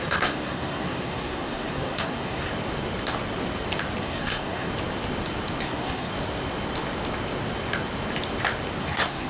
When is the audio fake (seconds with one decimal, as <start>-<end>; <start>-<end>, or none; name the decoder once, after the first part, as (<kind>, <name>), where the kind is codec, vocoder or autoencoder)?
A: 0.0-2.5 (codec, SNAC); 4.0-4.7; 5.6-6.1; 8.8-9.3